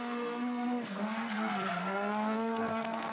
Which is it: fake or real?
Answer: fake